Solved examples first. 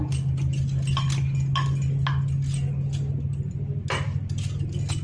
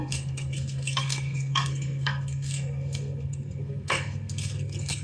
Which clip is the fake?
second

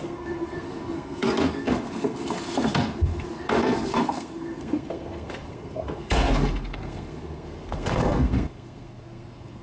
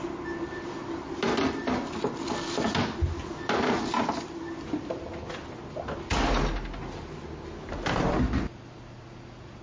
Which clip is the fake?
first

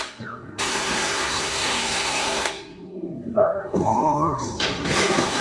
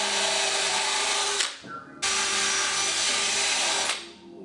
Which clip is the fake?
first